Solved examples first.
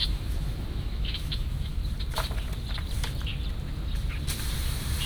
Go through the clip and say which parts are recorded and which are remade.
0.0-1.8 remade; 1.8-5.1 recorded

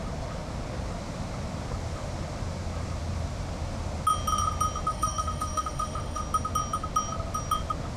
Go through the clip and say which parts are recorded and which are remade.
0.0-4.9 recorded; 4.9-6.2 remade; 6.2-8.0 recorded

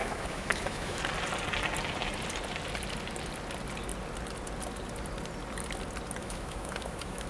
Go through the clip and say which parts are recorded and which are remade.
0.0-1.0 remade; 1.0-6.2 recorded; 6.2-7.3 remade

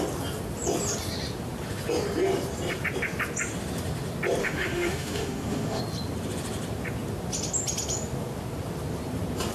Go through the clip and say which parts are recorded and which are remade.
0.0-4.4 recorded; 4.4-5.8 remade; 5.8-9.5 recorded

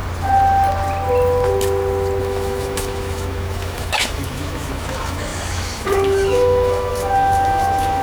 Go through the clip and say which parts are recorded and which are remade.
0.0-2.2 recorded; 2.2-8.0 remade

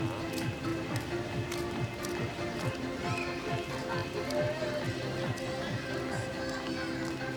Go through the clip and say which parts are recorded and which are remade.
0.0-7.4 recorded